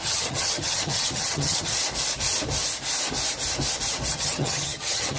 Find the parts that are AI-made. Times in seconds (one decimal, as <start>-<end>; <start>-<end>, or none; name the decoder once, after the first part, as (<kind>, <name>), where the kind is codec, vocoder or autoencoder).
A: 0.0-1.7 (vocoder, HiFi-GAN); 4.1-5.2